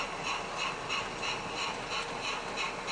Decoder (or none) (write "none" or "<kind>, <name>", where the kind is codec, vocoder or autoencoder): none